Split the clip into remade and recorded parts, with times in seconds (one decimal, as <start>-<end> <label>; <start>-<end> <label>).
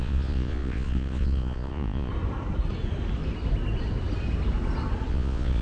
0.0-2.1 remade; 2.1-5.1 recorded; 5.1-5.6 remade